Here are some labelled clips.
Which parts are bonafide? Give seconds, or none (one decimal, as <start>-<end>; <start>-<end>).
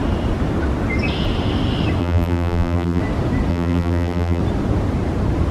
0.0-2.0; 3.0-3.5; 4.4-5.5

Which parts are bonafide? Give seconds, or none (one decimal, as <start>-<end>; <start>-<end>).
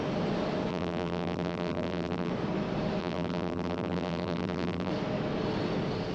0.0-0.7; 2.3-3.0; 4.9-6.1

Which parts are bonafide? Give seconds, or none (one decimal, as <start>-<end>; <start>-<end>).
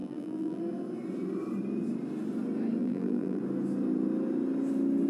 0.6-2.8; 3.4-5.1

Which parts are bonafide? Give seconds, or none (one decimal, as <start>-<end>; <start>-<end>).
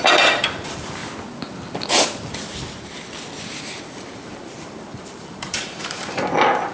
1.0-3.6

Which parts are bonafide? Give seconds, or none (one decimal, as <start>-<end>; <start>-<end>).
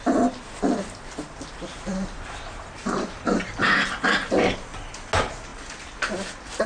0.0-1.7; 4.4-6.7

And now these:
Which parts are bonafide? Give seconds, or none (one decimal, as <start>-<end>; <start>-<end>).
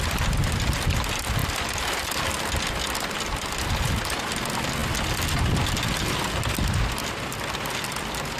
0.0-8.4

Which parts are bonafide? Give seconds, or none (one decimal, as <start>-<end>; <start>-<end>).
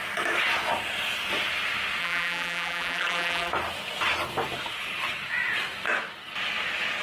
0.0-2.0; 3.5-7.0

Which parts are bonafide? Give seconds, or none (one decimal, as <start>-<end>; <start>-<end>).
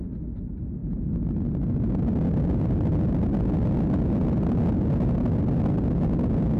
0.0-6.6